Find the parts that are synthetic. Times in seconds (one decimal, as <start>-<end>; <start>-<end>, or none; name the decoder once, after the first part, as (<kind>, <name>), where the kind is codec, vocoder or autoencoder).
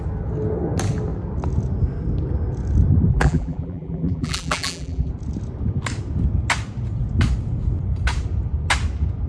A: 3.1-5.1 (vocoder, BigVGAN v2)